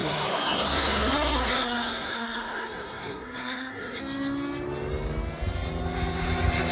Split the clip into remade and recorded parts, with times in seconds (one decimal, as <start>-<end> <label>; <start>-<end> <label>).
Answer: 0.0-4.0 remade; 4.0-6.7 recorded